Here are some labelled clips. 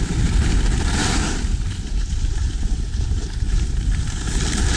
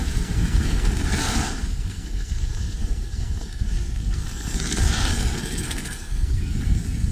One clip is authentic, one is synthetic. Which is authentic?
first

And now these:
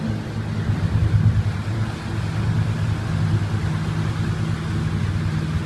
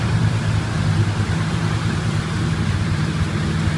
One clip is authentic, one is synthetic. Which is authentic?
first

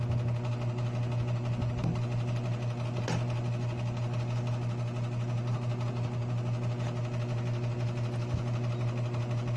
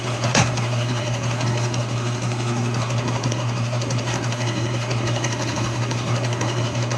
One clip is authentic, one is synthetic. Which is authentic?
first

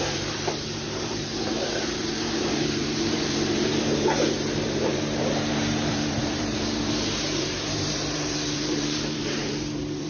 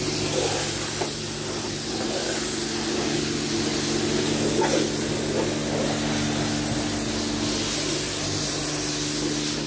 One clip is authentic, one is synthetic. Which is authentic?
second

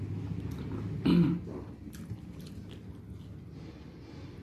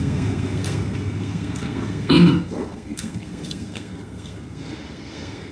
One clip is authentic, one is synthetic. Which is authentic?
first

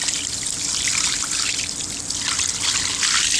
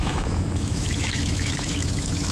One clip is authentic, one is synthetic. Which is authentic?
first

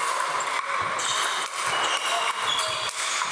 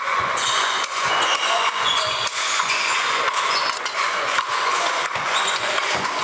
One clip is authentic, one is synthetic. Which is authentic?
first